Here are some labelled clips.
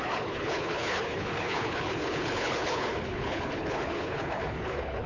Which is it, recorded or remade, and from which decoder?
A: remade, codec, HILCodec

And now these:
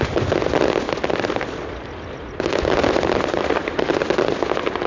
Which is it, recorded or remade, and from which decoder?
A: recorded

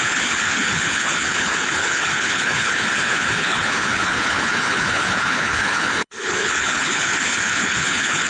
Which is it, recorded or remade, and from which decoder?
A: remade, codec, HILCodec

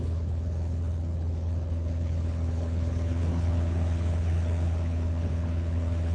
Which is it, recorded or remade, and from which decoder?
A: remade, codec, HILCodec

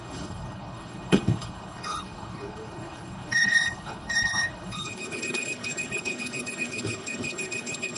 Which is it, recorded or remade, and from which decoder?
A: remade, codec, HILCodec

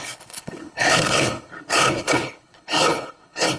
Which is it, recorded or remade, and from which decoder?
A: remade, codec, HILCodec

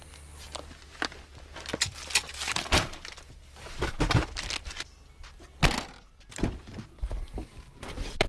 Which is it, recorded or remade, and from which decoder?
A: recorded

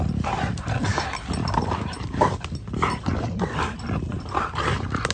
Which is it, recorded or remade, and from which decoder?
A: recorded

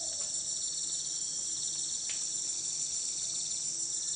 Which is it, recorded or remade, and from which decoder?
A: recorded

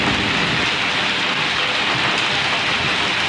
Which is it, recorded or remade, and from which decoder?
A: recorded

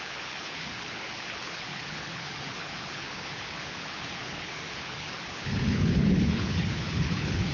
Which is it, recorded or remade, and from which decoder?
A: remade, codec, HILCodec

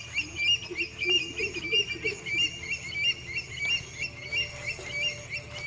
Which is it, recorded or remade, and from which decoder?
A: recorded